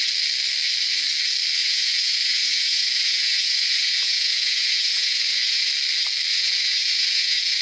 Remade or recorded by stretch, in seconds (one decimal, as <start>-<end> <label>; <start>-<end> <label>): 0.0-1.6 recorded; 1.6-5.7 remade; 5.7-6.3 recorded; 6.3-7.6 remade